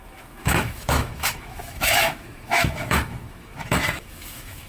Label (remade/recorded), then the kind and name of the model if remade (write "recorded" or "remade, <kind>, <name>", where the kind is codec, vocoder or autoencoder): remade, autoencoder, DAC-VAE